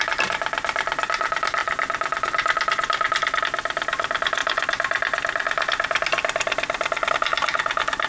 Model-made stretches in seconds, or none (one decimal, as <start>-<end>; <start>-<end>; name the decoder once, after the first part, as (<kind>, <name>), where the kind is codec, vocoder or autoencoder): none